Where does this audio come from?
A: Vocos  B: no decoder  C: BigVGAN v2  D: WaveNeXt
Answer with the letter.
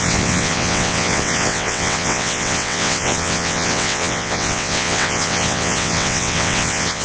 D